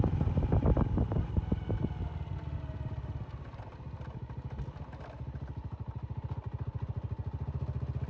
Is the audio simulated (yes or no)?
no